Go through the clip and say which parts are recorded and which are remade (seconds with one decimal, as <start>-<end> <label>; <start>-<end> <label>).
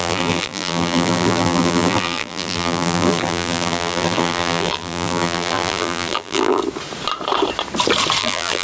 0.0-6.6 remade; 6.6-8.2 recorded; 8.2-8.6 remade